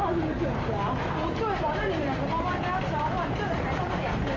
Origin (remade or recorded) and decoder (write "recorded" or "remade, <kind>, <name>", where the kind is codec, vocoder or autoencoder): recorded